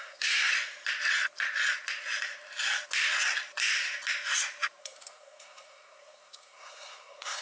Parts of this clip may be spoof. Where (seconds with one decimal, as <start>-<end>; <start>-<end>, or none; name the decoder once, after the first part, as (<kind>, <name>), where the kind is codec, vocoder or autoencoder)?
0.0-0.5 (codec, SNAC); 4.8-7.4